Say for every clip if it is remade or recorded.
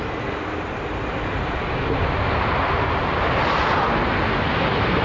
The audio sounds recorded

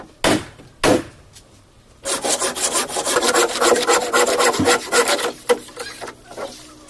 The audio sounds recorded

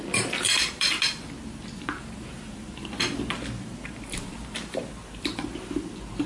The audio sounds recorded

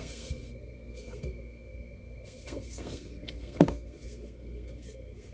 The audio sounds remade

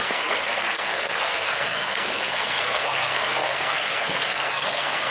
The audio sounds remade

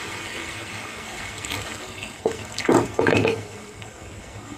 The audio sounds remade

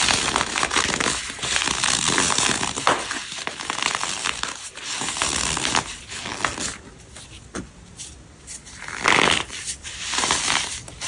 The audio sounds recorded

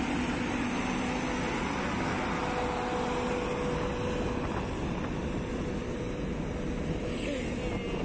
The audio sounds recorded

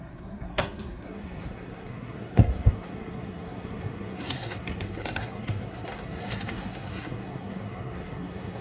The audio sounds remade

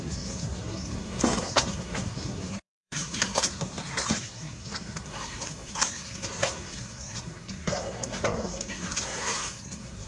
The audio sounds remade